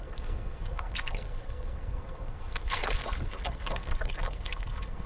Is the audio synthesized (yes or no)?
yes